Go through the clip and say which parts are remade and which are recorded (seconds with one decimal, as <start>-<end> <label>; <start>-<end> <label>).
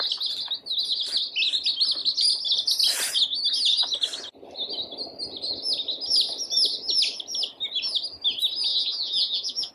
0.0-8.7 recorded; 8.7-9.7 remade